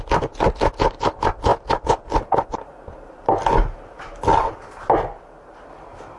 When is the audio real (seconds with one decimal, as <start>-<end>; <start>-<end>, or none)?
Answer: 0.0-6.2